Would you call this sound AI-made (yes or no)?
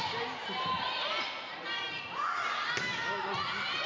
no